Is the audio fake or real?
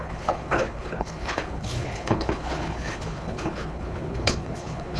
fake